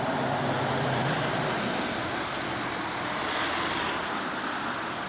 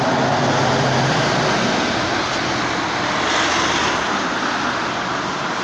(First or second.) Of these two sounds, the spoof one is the first